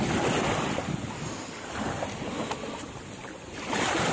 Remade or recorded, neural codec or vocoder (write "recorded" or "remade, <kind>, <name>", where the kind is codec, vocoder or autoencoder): recorded